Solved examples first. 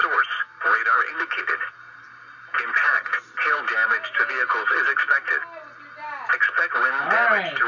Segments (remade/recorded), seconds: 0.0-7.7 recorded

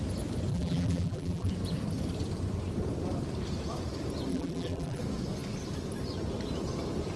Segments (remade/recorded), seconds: 0.0-0.5 recorded; 0.5-1.5 remade; 1.5-4.3 recorded; 4.3-5.0 remade; 5.0-7.2 recorded

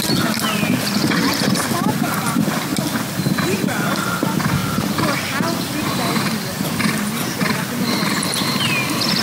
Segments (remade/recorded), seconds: 0.0-2.7 recorded; 2.7-4.1 remade; 4.1-4.6 recorded; 4.6-8.6 remade; 8.6-9.2 recorded